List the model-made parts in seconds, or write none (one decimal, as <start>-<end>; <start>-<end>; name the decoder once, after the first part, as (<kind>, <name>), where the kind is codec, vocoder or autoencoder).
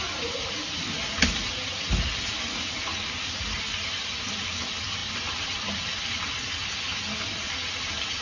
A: none